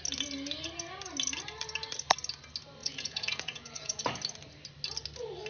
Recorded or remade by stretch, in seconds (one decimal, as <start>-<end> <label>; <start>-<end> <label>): 0.0-2.8 recorded; 2.8-4.0 remade; 4.0-5.5 recorded